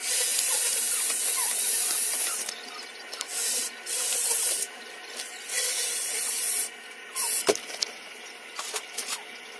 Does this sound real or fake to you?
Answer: fake